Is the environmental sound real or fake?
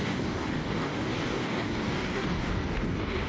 fake